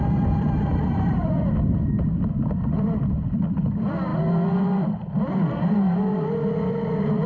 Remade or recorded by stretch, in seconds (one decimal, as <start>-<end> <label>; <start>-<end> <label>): 0.0-7.3 recorded